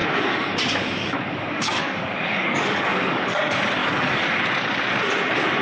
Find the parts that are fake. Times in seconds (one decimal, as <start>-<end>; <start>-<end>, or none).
0.0-3.4; 3.8-4.3